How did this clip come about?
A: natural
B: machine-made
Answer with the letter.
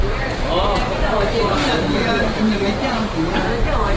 A